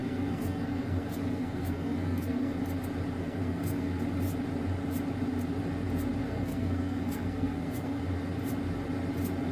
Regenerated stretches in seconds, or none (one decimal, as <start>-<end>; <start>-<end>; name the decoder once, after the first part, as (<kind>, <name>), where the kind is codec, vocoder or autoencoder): 0.0-2.6 (codec, SNAC); 3.2-4.0; 6.2-8.0